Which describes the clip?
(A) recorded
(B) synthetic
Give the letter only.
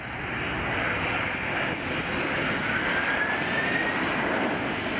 A